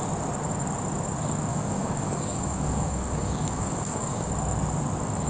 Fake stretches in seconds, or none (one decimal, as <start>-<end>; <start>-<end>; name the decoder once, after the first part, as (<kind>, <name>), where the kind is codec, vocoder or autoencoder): 1.5-4.3 (codec, DAC)